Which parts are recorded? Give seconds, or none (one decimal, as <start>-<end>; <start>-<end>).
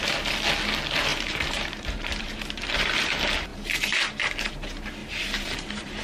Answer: 0.0-1.1; 3.1-3.5; 4.5-5.0